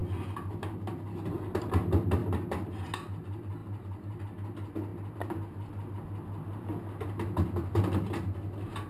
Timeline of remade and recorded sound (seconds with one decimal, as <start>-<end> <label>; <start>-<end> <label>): 0.0-3.6 recorded; 3.6-4.2 remade; 4.2-8.9 recorded